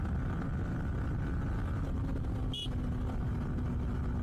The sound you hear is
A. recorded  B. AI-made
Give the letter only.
A